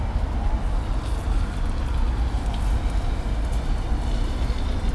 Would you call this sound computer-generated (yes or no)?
no